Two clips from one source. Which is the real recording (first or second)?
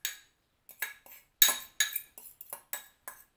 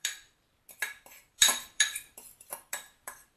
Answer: first